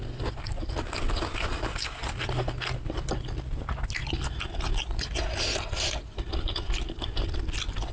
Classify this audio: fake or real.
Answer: real